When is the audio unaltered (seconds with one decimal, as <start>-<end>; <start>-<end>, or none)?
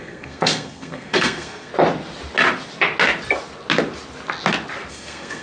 1.7-4.9